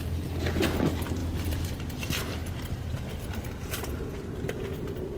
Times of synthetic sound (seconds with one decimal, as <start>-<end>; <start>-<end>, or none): 0.0-1.2; 2.0-5.2